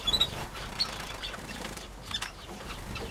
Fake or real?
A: fake